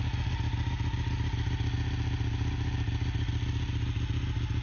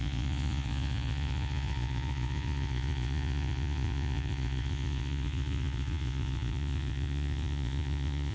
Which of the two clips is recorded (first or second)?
first